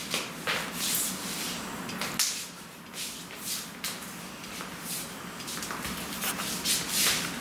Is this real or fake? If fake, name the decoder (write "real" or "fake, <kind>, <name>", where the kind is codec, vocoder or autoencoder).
real